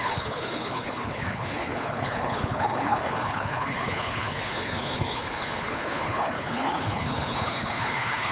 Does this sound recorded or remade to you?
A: remade